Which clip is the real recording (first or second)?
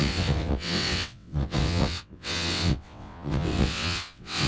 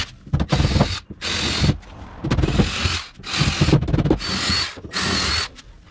second